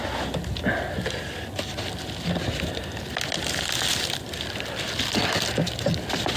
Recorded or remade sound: recorded